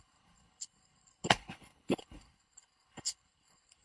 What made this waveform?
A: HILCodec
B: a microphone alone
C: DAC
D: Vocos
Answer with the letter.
A